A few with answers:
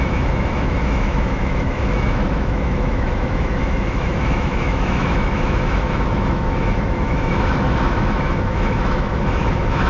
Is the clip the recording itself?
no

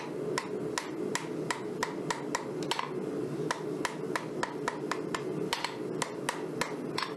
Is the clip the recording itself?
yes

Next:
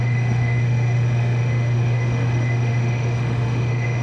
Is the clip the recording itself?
no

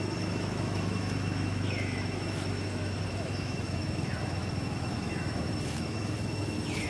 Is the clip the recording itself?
no